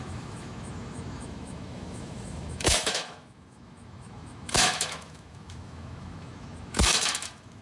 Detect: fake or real fake